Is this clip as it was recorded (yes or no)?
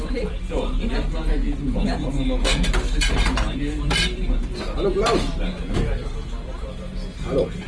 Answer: yes